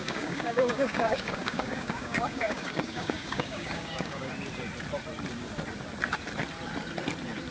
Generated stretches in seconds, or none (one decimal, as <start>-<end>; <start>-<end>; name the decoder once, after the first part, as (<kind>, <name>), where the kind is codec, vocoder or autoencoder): 0.0-4.3 (codec, DAC)